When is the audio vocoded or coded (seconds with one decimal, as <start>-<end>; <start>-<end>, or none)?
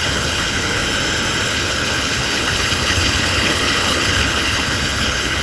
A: 0.0-0.8; 1.5-5.4